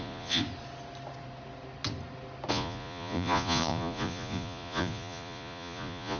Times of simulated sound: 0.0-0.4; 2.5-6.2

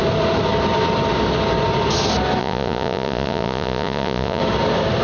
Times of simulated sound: 2.4-4.4

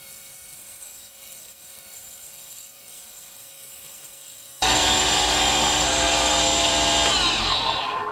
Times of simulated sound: 0.0-6.7; 7.4-8.1